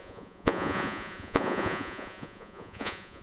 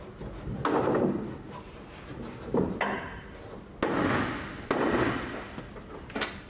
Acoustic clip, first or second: second